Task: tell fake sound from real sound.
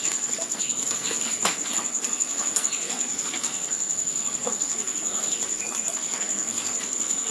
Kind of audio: fake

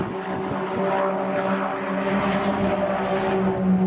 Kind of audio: real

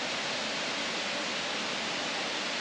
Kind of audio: real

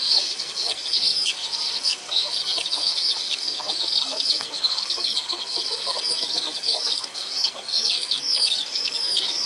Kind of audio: fake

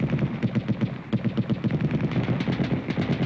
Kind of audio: real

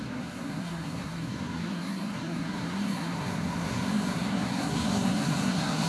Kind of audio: fake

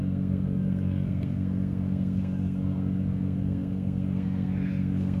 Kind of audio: fake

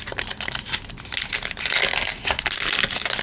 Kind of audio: real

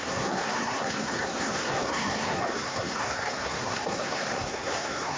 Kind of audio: fake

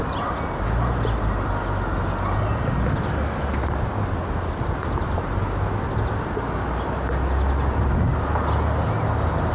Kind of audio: real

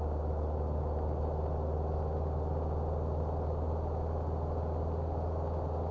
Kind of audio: real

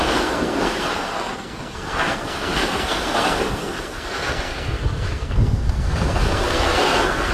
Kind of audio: fake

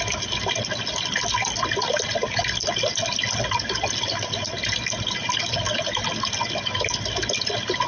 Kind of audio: real